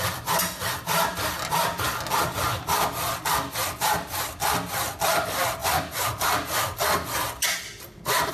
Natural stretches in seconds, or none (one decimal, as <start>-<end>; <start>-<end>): 0.0-8.3